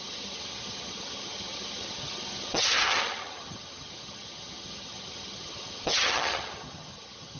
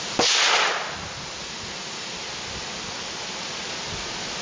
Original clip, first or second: second